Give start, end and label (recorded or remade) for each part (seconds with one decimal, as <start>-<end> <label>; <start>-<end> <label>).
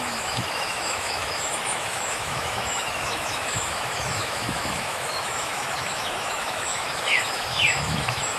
0.0-8.4 remade